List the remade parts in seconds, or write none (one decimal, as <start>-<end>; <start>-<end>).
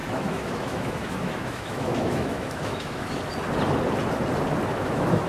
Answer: 0.0-3.2; 4.7-5.3